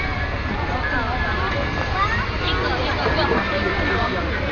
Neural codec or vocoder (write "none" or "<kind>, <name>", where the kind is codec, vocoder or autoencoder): none